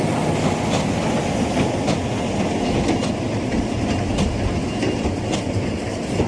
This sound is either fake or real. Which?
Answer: real